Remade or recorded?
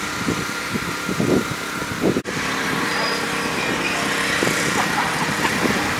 remade